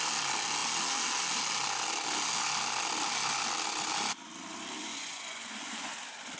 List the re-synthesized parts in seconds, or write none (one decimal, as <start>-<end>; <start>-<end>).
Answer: 4.8-5.9